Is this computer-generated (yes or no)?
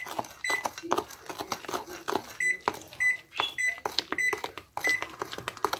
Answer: no